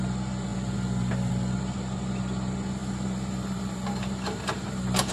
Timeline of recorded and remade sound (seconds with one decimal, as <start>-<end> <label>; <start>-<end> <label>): 0.0-2.8 recorded; 2.8-5.1 remade